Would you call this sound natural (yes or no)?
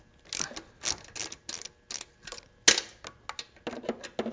yes